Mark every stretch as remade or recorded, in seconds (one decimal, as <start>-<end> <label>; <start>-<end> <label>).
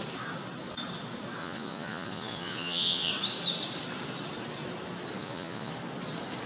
0.0-1.4 recorded; 1.4-3.1 remade; 3.1-5.2 recorded; 5.2-5.7 remade; 5.7-6.5 recorded